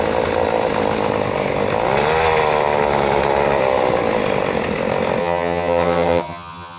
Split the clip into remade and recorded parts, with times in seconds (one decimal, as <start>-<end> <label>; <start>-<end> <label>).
0.0-5.2 recorded; 5.2-6.8 remade